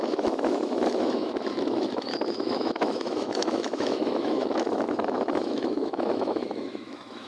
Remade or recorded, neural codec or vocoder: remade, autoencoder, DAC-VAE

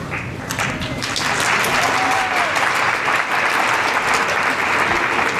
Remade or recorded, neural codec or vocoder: recorded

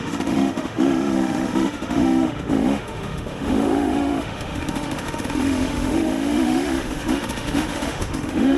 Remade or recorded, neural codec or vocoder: remade, autoencoder, DAC-VAE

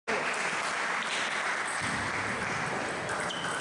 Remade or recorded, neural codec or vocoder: recorded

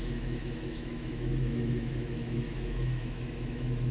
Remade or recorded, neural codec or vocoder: remade, autoencoder, DAC-VAE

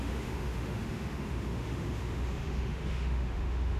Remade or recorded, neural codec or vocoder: remade, autoencoder, DAC-VAE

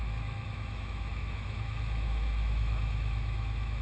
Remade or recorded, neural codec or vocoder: remade, autoencoder, DAC-VAE